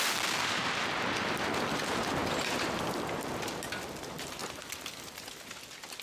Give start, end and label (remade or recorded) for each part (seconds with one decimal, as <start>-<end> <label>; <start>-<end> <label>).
0.0-6.0 recorded